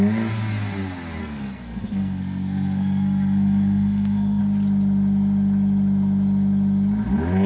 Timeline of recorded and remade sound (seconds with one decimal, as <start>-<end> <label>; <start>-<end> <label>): 0.0-1.2 recorded; 1.2-4.4 remade; 4.4-7.5 recorded